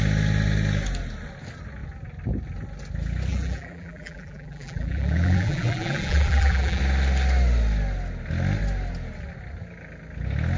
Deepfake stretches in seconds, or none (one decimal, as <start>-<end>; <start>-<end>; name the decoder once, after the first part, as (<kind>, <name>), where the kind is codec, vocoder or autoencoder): 3.3-6.8 (vocoder, BigVGAN v2)